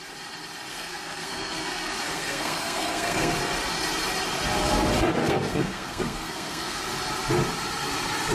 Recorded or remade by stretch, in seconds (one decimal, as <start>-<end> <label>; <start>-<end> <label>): 0.0-0.7 recorded; 0.7-3.3 remade; 3.3-5.2 recorded; 5.2-6.8 remade; 6.8-8.3 recorded